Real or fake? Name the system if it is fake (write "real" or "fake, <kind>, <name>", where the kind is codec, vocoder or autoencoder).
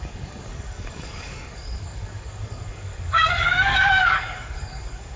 fake, codec, DAC